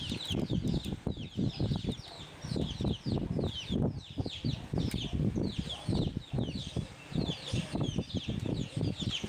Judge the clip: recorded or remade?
recorded